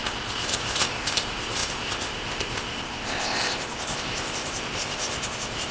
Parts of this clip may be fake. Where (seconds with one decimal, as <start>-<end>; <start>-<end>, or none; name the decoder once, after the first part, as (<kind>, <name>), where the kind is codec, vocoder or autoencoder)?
0.0-5.7 (codec, ZipCodec)